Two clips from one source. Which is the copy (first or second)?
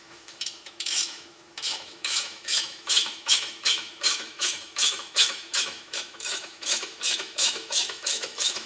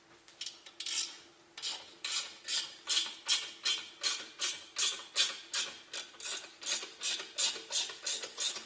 first